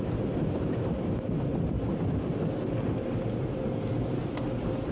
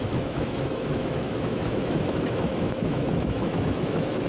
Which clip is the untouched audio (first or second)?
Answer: first